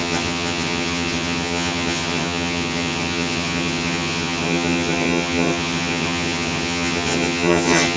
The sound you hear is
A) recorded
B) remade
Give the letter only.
B